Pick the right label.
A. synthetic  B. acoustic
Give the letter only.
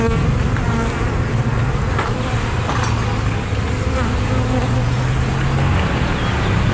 B